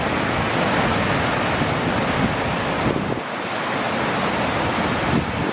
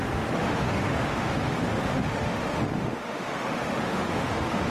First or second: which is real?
first